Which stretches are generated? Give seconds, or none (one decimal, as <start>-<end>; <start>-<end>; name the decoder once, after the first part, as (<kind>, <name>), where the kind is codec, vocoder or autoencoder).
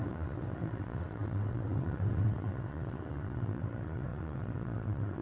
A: 0.0-5.2 (vocoder, WaveNeXt)